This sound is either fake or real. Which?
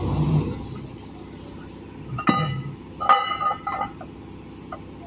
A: real